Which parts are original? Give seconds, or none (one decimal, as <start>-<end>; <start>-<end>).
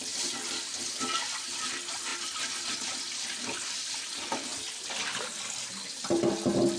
0.0-6.8